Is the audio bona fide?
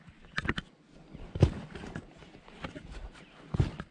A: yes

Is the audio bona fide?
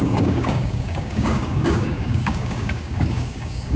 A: no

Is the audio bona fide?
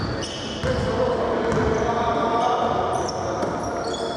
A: yes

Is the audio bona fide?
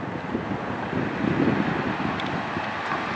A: yes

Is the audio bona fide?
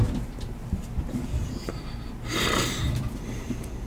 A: yes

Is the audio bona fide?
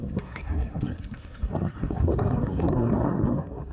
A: no